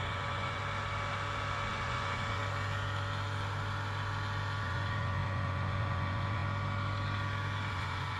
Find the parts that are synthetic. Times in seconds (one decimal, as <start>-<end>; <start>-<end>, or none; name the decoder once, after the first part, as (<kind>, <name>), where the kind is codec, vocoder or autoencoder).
0.0-0.6 (vocoder, Vocos); 1.7-2.4; 4.6-6.4; 7.7-8.2